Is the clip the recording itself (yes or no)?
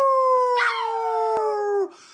no